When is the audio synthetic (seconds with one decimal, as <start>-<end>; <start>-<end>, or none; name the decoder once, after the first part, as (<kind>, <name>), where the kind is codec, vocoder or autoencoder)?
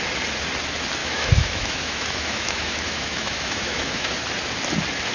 1.0-4.1 (autoencoder, DAC-VAE)